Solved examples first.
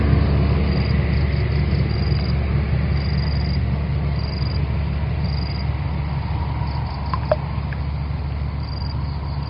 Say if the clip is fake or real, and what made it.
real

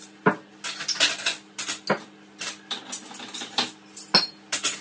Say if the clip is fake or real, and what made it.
real